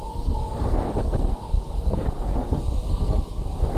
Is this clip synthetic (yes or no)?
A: yes